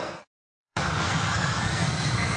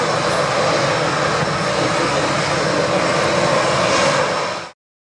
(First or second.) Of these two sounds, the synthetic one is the first